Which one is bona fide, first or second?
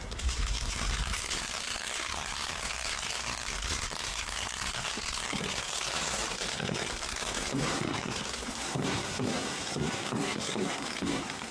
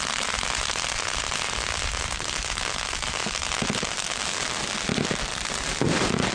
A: second